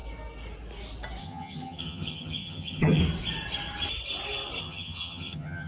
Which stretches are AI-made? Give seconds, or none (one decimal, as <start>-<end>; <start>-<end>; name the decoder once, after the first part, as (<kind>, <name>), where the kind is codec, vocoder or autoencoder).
1.2-3.0 (vocoder, HiFi-GAN); 4.6-5.7